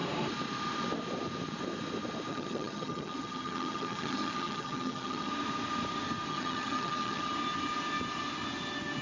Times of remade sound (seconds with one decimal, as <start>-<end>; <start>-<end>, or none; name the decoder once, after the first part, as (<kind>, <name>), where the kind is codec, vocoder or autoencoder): 2.3-5.3 (vocoder, HiFi-GAN); 6.3-7.3